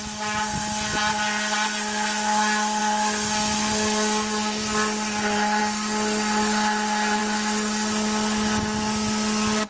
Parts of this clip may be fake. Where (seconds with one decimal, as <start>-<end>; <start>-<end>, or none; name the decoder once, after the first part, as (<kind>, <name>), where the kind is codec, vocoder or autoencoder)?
none